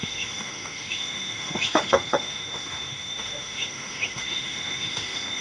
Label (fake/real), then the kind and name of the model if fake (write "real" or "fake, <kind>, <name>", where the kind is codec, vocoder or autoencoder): fake, autoencoder, DAC-VAE